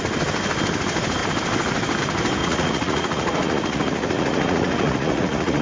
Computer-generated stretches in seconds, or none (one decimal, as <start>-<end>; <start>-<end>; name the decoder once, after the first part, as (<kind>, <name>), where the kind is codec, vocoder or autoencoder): 2.4-5.6 (vocoder, Vocos)